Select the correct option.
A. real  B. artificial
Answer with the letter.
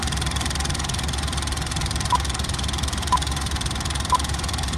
B